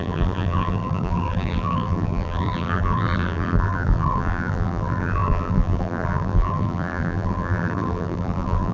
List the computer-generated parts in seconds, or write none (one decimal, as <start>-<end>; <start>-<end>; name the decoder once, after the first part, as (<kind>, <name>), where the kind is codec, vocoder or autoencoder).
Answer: 0.0-8.7 (vocoder, BigVGAN v2)